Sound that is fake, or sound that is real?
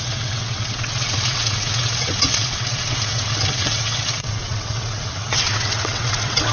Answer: fake